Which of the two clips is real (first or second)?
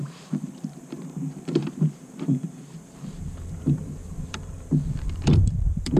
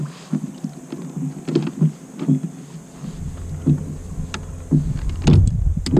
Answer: second